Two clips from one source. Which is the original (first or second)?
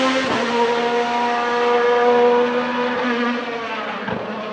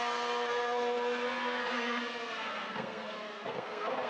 first